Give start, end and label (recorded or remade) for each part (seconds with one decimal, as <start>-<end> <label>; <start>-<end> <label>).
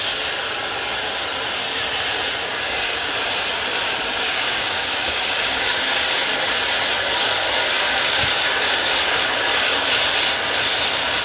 0.0-2.4 recorded; 2.4-3.1 remade; 3.1-4.3 recorded; 4.3-6.5 remade; 6.5-7.4 recorded; 7.4-9.9 remade; 9.9-11.2 recorded